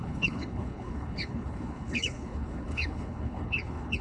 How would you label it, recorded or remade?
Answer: remade